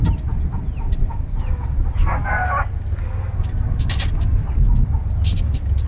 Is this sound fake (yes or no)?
no